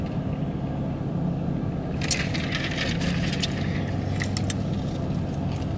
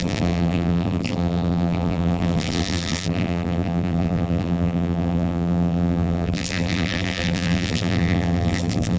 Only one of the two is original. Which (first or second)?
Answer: first